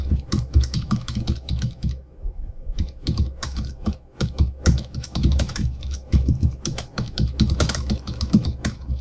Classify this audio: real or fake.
fake